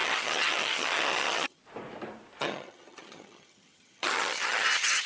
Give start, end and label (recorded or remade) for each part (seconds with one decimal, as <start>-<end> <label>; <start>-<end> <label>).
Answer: 0.0-1.6 remade; 1.6-2.4 recorded; 2.4-5.1 remade